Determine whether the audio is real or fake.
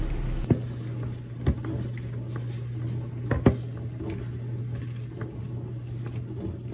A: real